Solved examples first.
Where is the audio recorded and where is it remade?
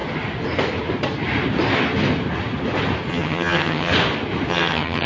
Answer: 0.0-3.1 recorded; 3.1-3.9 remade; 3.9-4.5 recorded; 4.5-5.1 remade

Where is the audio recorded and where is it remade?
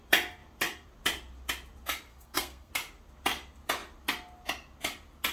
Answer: 0.0-2.1 recorded; 2.1-2.7 remade; 2.7-5.3 recorded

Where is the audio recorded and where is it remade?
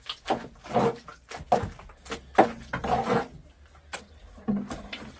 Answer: 0.0-5.2 recorded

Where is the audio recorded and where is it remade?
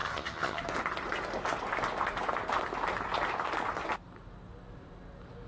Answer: 0.0-0.6 remade; 0.6-5.5 recorded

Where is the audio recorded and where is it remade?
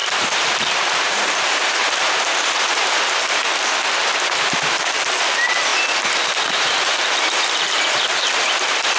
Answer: 0.0-3.4 remade; 3.4-4.4 recorded; 4.4-5.7 remade; 5.7-6.5 recorded; 6.5-9.0 remade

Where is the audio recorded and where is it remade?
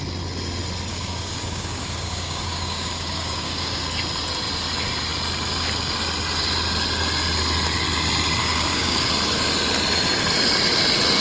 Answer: 0.0-0.9 recorded; 0.9-3.8 remade; 3.8-8.4 recorded; 8.4-9.1 remade; 9.1-11.2 recorded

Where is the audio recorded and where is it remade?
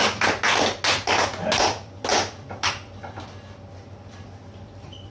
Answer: 0.0-5.1 recorded